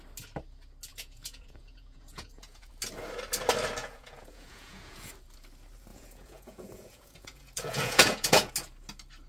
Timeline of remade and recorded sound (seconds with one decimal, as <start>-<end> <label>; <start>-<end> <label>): 0.0-0.9 recorded; 0.9-2.7 remade; 2.7-3.8 recorded; 3.8-5.1 remade; 5.1-5.9 recorded; 5.9-8.5 remade; 8.5-9.3 recorded